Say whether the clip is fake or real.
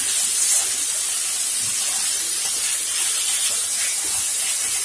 real